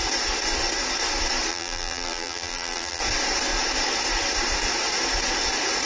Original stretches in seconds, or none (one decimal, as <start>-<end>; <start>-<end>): 0.0-1.5; 3.0-5.9